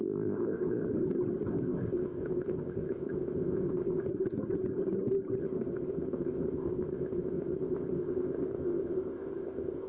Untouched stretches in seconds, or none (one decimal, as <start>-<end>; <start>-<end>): 0.9-1.5; 4.1-5.4